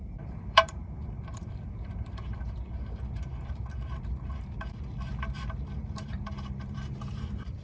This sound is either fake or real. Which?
fake